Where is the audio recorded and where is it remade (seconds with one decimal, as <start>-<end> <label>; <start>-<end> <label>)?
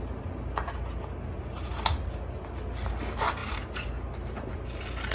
0.0-5.1 recorded